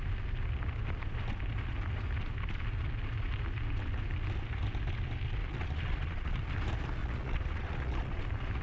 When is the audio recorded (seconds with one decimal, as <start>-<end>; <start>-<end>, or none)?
0.0-5.4; 6.4-7.0; 8.2-8.6